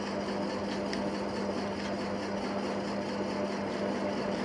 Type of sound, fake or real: real